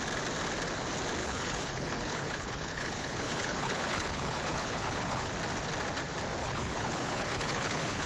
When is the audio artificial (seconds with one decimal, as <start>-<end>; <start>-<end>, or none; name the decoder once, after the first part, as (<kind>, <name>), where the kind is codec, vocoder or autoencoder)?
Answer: 1.2-5.3 (codec, HILCodec); 6.4-8.1